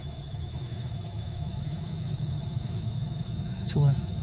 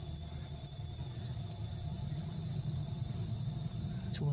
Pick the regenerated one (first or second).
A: first